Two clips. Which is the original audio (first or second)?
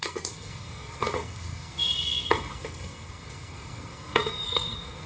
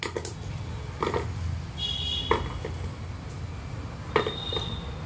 second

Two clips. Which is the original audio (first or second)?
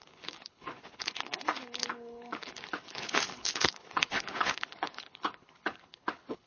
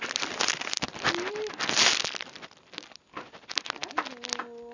second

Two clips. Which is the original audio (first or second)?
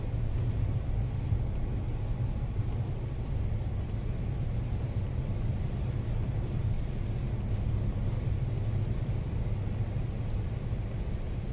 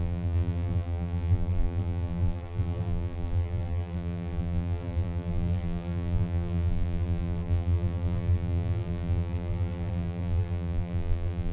first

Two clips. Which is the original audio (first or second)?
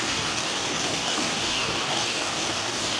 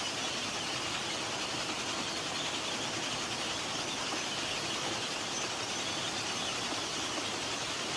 second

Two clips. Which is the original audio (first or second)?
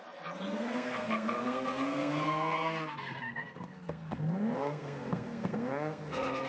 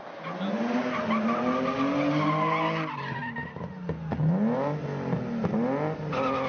second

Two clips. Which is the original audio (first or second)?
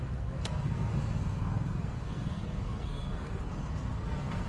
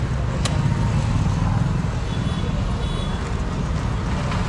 second